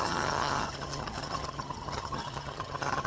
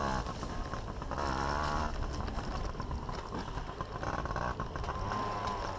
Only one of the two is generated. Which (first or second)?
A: first